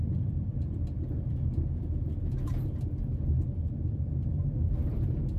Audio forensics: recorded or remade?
recorded